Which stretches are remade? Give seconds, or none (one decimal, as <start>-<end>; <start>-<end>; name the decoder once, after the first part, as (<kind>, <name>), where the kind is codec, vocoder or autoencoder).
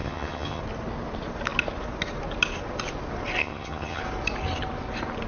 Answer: 0.0-0.6 (vocoder, HiFi-GAN); 3.4-4.0